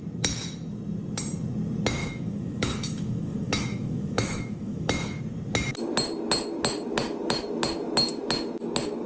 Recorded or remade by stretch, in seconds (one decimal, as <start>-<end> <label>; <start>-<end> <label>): 0.0-2.0 recorded; 2.0-5.2 remade; 5.2-9.1 recorded